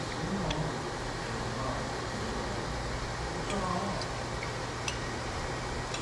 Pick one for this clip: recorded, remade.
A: recorded